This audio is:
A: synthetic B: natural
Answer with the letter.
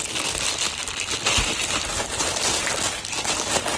B